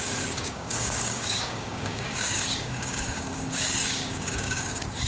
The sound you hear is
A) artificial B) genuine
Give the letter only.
A